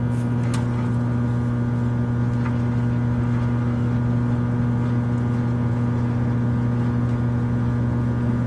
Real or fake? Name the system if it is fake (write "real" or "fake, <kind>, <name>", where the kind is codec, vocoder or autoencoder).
real